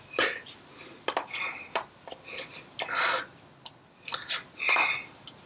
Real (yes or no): yes